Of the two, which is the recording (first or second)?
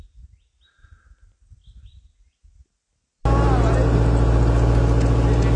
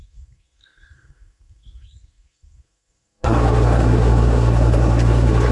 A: first